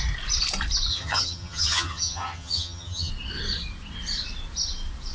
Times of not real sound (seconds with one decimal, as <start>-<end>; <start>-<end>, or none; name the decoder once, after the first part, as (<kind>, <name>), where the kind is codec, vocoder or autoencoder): 0.9-3.1 (vocoder, HiFi-GAN)